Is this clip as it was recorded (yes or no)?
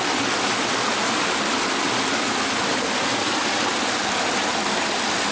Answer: yes